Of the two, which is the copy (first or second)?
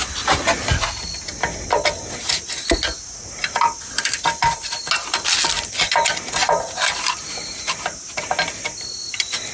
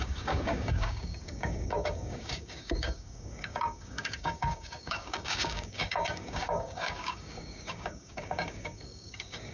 second